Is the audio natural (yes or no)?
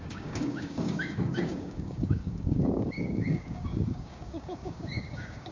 no